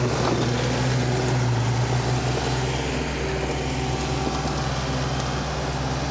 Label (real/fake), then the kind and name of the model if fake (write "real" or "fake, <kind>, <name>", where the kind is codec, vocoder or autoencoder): real